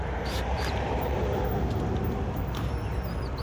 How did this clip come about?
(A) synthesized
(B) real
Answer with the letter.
A